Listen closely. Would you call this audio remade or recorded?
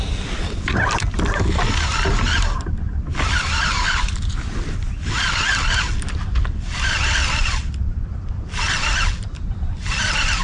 recorded